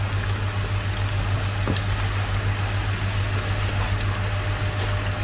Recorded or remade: recorded